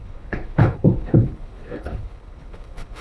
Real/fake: fake